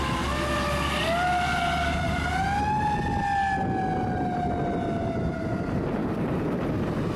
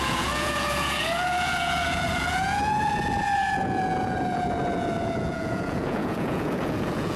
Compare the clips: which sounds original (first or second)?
first